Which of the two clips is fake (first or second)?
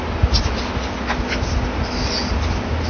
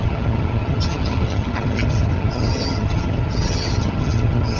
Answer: second